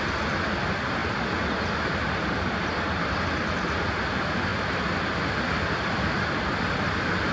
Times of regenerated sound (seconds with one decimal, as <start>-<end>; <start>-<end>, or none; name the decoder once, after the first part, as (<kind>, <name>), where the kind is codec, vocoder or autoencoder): none